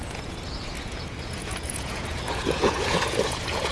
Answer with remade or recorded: remade